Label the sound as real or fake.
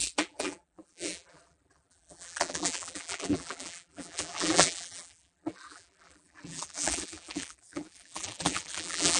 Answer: fake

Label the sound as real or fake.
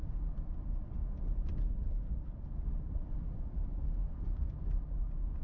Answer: real